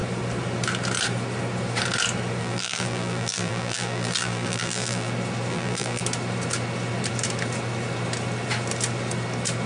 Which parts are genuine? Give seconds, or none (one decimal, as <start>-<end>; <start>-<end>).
0.0-2.4; 5.1-5.5; 6.0-9.7